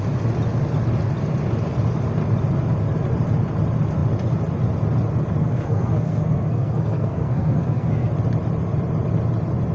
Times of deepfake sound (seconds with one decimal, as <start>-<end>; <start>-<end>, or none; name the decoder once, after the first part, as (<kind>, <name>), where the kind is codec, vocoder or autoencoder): 5.4-8.1 (codec, SNAC)